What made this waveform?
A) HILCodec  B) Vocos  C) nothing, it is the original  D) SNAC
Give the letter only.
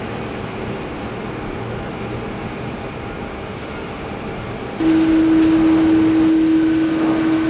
C